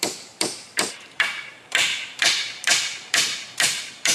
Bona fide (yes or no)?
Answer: no